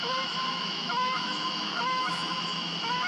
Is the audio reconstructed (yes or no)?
yes